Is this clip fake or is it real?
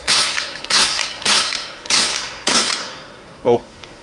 fake